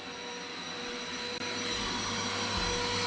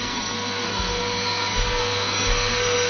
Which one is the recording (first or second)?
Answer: first